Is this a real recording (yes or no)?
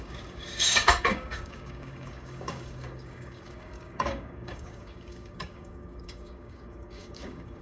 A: no